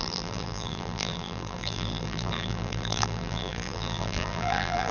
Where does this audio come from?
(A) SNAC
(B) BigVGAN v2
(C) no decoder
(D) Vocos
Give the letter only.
B